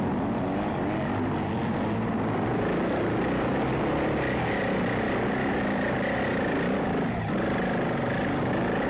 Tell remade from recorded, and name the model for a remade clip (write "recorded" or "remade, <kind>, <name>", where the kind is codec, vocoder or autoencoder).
recorded